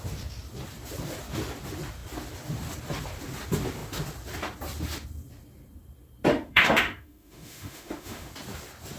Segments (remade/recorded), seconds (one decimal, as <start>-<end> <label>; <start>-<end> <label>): 0.0-6.3 recorded; 6.3-8.3 remade; 8.3-9.0 recorded